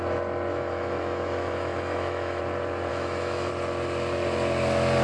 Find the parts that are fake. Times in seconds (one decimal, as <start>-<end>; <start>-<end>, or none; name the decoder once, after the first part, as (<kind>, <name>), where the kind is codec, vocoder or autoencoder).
0.5-2.4 (autoencoder, DAC-VAE); 2.9-3.5